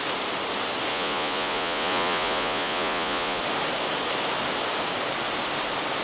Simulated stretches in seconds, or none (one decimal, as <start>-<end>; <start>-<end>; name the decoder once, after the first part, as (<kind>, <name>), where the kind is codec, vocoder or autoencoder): 0.9-3.4 (vocoder, Vocos)